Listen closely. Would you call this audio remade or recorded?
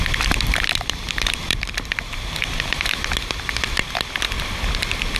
remade